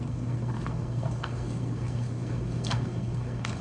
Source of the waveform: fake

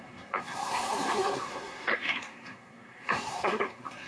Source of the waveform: fake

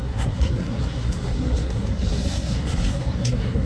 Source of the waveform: fake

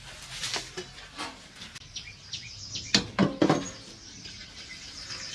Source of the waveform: real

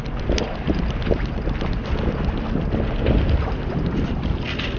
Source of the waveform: real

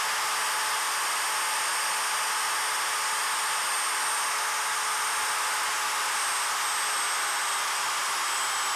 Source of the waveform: real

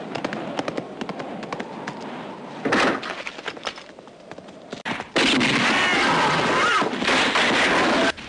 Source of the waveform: real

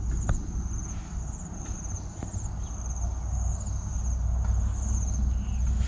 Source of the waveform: real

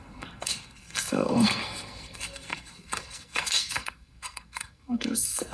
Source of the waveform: fake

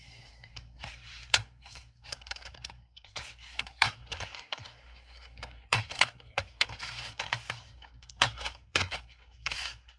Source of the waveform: fake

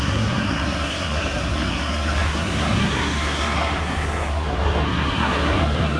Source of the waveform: fake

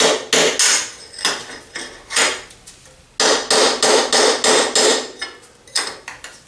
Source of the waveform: real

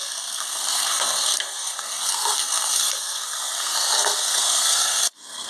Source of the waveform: fake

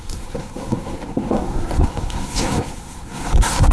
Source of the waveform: fake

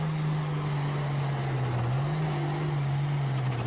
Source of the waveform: real